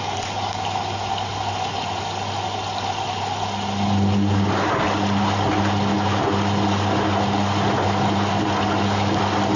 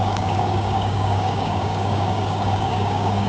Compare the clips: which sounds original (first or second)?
first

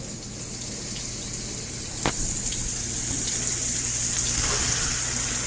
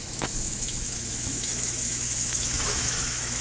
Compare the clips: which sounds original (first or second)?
first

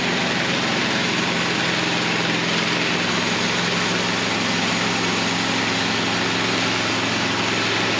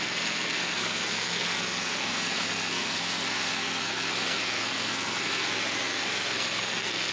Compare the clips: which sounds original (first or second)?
first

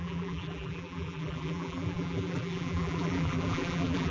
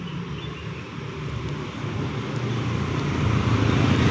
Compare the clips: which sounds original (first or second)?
second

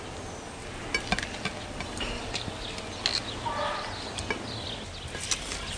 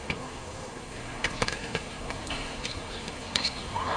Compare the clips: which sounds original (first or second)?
first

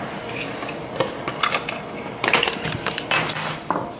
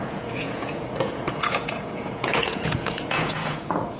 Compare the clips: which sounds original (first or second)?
first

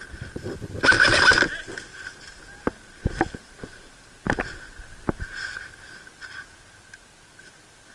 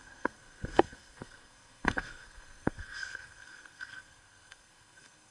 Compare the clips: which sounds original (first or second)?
first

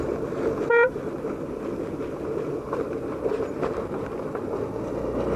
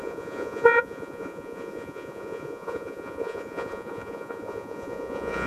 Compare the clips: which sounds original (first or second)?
first